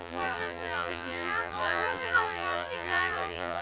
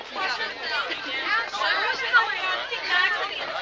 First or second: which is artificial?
first